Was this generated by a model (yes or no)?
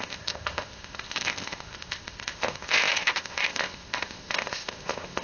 yes